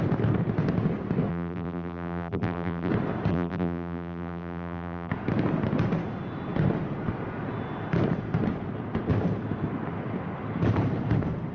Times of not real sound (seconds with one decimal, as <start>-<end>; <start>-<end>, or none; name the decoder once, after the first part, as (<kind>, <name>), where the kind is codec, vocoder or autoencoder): 1.3-2.9 (vocoder, BigVGAN v2); 3.3-5.1